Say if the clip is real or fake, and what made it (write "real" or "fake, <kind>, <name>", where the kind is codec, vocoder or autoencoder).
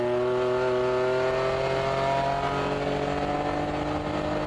real